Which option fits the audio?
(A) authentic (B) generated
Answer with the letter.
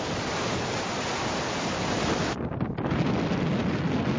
A